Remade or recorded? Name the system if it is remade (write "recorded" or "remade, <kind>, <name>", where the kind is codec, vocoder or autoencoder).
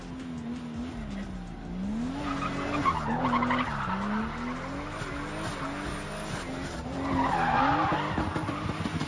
recorded